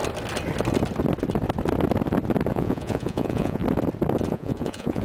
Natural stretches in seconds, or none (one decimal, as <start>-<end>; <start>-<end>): 0.0-2.5; 3.6-4.3